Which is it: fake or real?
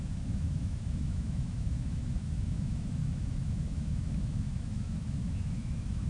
fake